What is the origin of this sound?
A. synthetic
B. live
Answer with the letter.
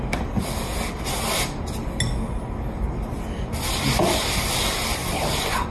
B